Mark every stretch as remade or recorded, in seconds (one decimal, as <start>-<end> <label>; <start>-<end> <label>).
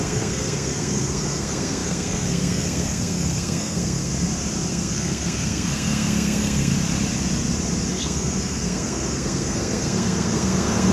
0.0-4.1 remade; 4.1-4.7 recorded; 4.7-6.7 remade; 6.7-7.9 recorded; 7.9-10.9 remade